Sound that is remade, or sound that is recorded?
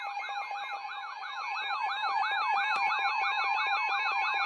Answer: recorded